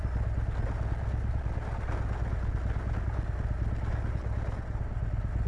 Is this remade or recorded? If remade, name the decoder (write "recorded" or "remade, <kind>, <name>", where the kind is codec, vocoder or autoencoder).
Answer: recorded